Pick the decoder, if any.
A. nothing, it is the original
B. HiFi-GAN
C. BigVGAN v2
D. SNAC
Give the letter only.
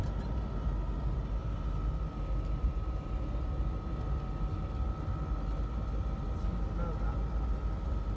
A